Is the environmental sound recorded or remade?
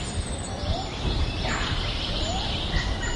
recorded